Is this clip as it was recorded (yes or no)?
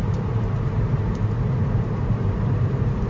no